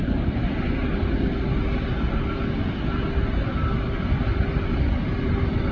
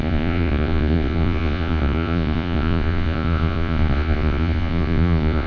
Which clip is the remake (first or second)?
second